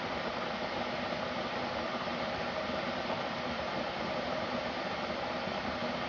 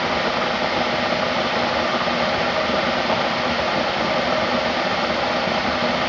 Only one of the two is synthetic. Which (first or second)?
first